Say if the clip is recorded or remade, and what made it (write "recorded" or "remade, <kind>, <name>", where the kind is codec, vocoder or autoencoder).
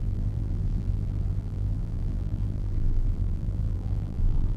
remade, vocoder, BigVGAN v2